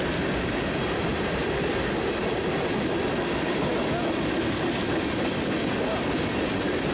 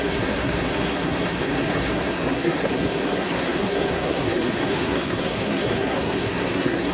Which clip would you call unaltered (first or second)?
first